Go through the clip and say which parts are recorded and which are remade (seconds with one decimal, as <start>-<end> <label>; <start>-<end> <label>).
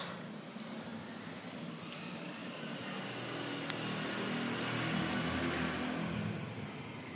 0.0-7.2 recorded